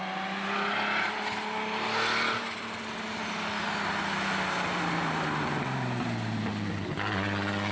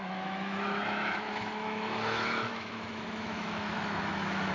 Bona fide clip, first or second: first